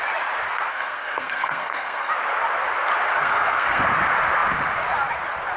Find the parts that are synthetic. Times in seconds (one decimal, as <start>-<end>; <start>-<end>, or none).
0.7-2.1; 3.1-3.8